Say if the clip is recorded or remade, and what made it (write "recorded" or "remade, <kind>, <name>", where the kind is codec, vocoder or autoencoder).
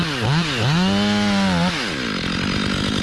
recorded